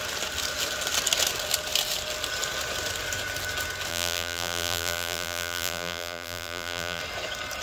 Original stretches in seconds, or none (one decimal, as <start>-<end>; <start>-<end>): 0.0-3.9; 7.0-7.6